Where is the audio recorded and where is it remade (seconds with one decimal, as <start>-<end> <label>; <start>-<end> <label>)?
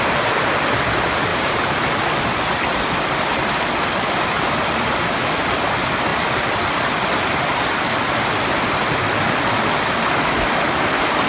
0.0-1.3 recorded; 1.3-1.9 remade; 1.9-11.3 recorded